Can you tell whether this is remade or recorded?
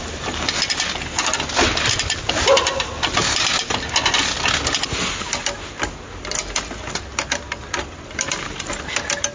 recorded